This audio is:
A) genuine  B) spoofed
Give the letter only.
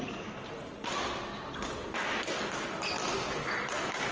A